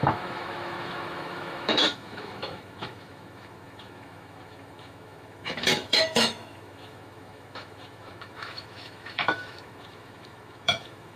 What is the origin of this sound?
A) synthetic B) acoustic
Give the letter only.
A